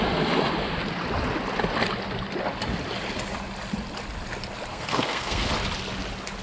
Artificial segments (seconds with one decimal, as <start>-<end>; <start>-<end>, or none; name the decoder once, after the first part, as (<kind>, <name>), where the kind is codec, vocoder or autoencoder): 4.7-5.5 (codec, SNAC)